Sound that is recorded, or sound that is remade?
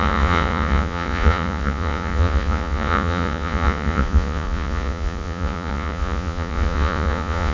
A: remade